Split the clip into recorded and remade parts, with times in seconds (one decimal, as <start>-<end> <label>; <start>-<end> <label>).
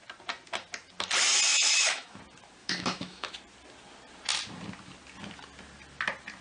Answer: 0.0-1.5 recorded; 1.5-2.2 remade; 2.2-2.6 recorded; 2.6-3.3 remade; 3.3-6.4 recorded